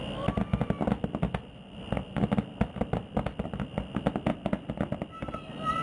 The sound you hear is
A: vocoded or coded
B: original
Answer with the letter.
B